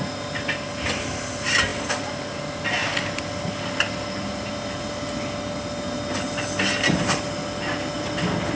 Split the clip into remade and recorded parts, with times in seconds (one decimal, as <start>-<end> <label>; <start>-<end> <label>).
0.0-8.6 recorded